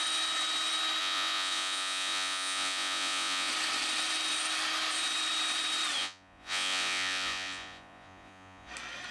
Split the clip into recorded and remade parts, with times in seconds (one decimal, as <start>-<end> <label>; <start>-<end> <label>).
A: 0.0-1.0 recorded; 1.0-3.5 remade; 3.5-6.0 recorded; 6.0-8.7 remade; 8.7-9.1 recorded